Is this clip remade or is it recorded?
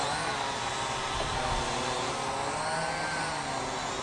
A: recorded